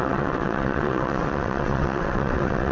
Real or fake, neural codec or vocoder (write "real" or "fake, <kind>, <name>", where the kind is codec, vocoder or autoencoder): fake, vocoder, WaveNeXt